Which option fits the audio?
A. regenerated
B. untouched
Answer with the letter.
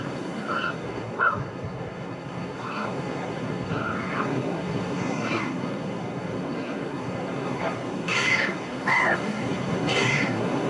A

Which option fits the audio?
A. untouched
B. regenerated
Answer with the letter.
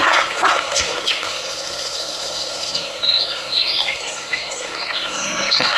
B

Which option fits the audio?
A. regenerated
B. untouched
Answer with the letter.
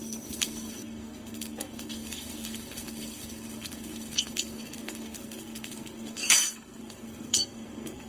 A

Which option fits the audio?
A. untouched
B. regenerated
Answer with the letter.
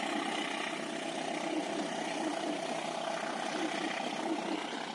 A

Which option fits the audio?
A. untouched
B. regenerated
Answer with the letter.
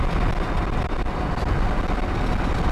A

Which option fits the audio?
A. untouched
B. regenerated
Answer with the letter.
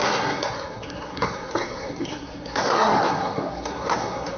B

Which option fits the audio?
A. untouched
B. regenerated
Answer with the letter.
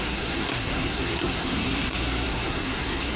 B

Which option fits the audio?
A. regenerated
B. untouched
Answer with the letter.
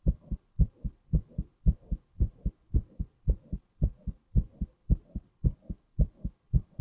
B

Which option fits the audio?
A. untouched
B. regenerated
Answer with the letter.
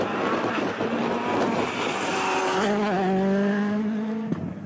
A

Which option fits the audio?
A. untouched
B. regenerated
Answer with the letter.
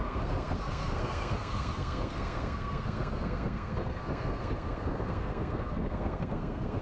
B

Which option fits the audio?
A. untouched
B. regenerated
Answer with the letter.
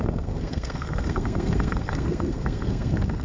B